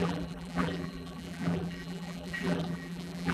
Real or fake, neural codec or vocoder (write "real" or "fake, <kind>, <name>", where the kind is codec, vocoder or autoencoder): fake, vocoder, BigVGAN v2